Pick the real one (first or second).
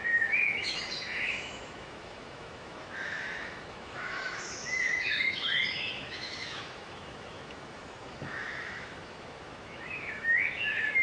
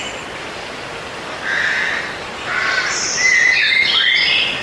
second